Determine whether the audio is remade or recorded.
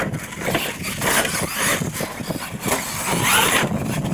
recorded